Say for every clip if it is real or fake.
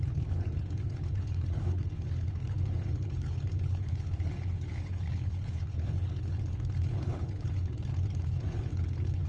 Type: fake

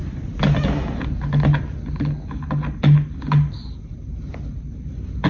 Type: real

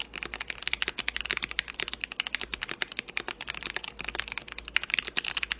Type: real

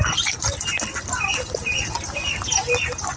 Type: real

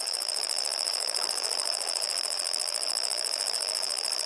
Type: fake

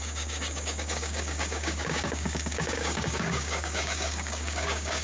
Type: fake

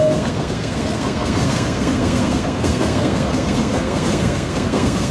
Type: fake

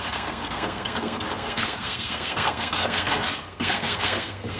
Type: fake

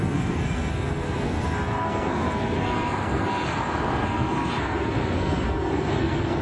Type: fake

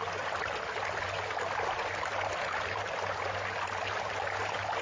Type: real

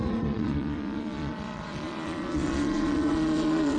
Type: fake